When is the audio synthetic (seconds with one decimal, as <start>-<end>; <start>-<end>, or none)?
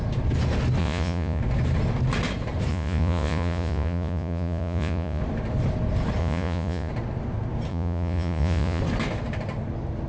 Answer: 0.8-1.4; 2.7-5.2; 6.2-6.9; 7.7-8.8